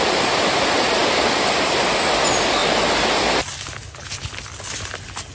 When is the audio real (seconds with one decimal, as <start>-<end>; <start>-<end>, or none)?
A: 0.0-5.3